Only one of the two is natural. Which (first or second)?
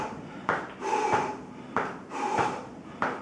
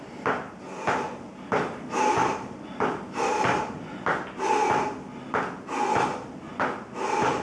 second